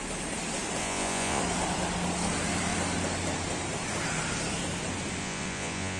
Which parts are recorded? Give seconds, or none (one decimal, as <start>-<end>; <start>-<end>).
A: 0.0-0.8; 1.4-5.2